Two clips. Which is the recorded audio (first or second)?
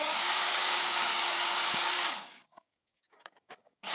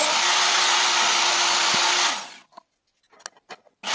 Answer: second